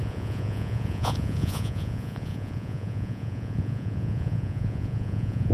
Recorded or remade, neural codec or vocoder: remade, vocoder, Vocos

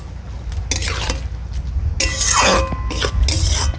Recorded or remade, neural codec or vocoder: recorded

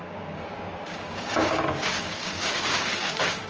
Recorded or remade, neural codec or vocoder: remade, codec, DAC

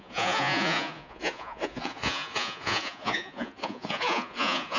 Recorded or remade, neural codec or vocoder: remade, vocoder, Vocos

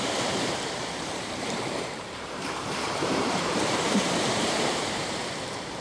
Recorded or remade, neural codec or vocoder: remade, vocoder, BigVGAN v2